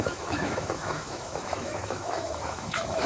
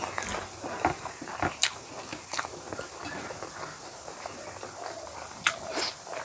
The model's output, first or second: first